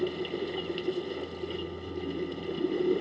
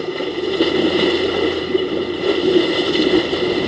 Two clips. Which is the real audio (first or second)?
first